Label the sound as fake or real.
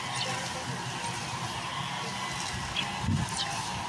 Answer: real